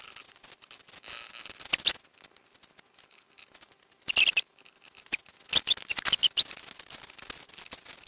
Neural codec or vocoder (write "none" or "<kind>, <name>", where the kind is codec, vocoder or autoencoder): none